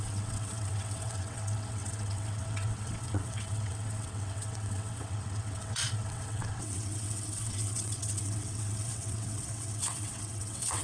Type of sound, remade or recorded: remade